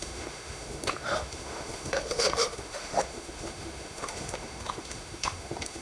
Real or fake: fake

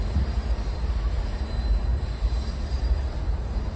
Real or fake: fake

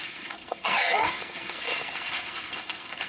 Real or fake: fake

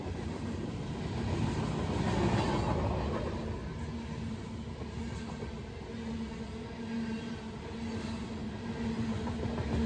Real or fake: real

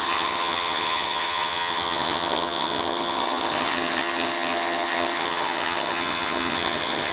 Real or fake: fake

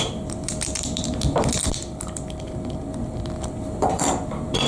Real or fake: fake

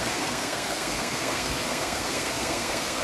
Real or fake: fake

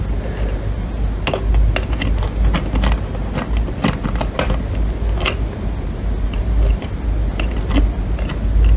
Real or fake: real